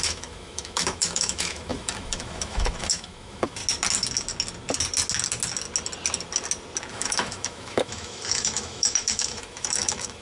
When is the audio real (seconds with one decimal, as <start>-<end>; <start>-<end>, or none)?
3.6-6.9